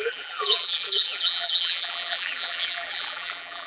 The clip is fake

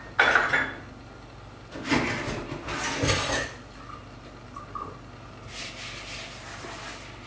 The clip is real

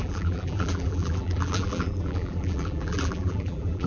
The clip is fake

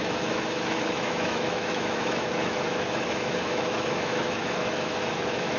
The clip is fake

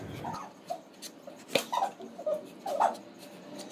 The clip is real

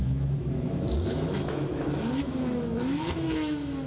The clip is fake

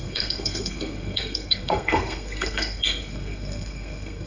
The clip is fake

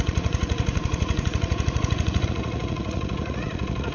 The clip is fake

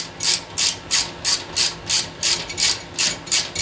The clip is real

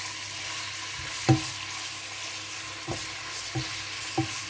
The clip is real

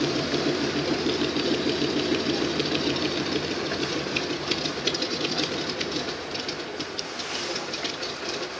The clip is fake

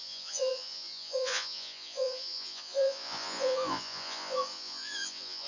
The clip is fake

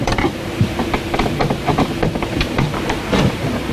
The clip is fake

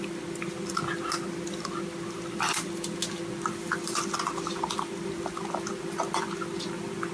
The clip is real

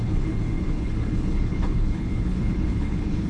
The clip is fake